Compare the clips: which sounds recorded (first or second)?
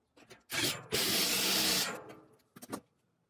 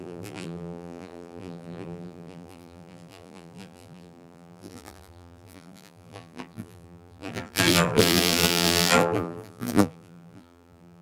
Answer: first